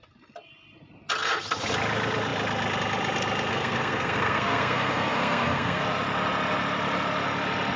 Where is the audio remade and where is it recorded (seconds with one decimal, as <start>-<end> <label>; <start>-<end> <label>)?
0.0-3.5 recorded; 3.5-5.8 remade; 5.8-7.8 recorded